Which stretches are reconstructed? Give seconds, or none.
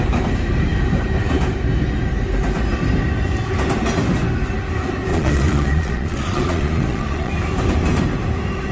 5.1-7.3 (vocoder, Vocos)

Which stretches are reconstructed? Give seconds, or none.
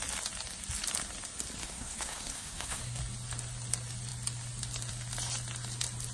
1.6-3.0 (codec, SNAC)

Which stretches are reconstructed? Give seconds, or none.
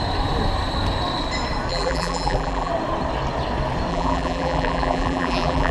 1.7-2.7 (vocoder, BigVGAN v2); 3.9-5.7